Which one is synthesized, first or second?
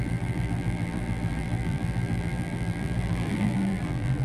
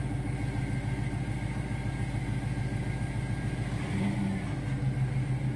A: first